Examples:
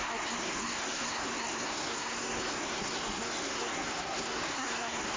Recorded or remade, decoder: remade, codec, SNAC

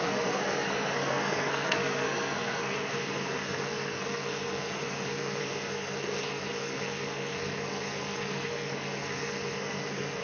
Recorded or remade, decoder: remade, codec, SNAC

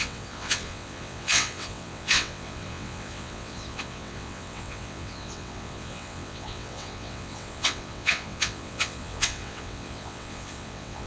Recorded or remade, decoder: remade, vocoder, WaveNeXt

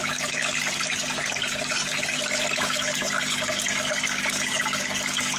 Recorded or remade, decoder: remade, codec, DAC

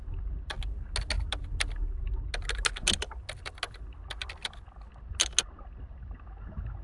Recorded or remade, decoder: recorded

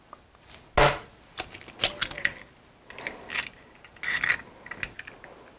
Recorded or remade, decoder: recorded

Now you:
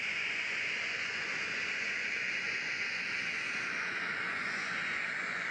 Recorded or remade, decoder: remade, vocoder, Vocos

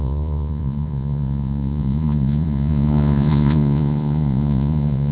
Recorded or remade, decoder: remade, vocoder, Vocos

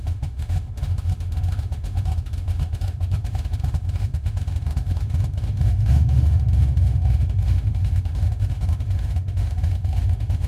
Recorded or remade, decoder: remade, autoencoder, DAC-VAE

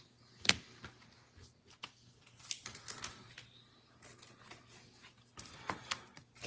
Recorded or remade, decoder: recorded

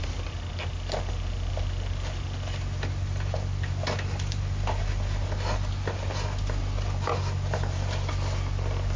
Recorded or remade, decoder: recorded